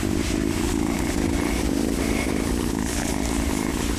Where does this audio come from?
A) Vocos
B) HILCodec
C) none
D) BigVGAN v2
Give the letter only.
C